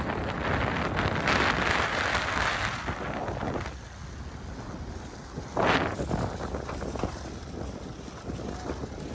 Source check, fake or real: real